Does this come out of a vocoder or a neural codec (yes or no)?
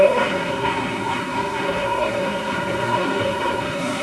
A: yes